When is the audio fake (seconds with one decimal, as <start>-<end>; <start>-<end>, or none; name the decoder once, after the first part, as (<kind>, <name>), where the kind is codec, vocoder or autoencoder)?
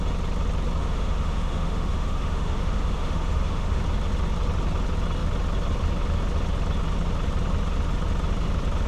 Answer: 0.8-3.8 (autoencoder, DAC-VAE)